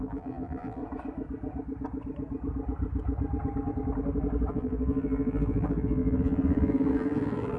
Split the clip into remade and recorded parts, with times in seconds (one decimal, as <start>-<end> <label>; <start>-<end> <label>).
0.0-0.8 remade; 0.8-4.5 recorded; 4.5-7.6 remade

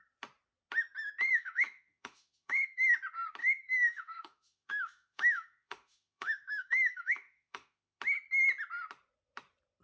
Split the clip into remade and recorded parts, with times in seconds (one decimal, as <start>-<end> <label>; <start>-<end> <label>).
0.0-1.3 recorded; 1.3-2.9 remade; 2.9-3.4 recorded; 3.4-8.0 remade; 8.0-9.8 recorded

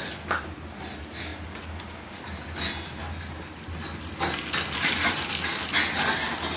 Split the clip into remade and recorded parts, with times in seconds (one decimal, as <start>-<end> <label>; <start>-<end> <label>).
0.0-6.6 recorded

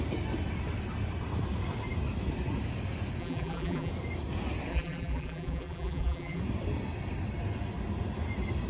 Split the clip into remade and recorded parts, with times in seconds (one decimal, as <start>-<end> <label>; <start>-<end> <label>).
0.0-3.2 recorded; 3.2-3.9 remade; 3.9-4.7 recorded; 4.7-6.4 remade; 6.4-8.7 recorded

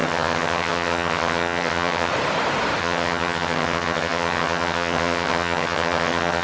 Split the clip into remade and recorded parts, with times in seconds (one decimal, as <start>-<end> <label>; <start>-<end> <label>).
0.0-2.1 remade; 2.1-2.8 recorded; 2.8-6.4 remade